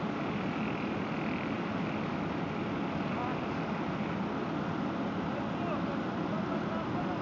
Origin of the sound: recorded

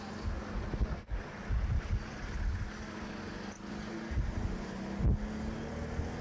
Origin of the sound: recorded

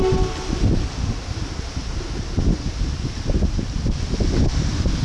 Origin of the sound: recorded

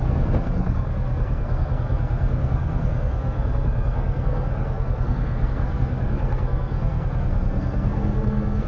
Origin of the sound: remade